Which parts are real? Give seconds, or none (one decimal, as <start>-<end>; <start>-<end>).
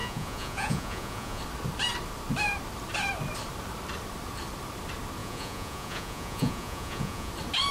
1.4-5.2; 7.3-7.7